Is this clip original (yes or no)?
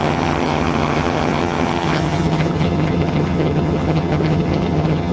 no